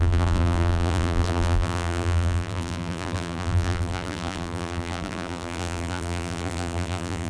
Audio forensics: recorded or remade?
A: remade